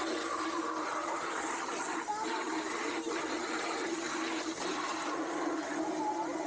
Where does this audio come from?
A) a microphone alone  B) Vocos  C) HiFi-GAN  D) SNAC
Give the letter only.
A